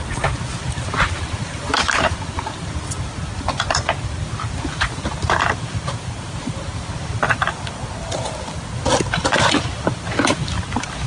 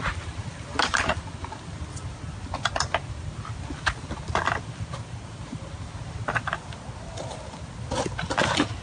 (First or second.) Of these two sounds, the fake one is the first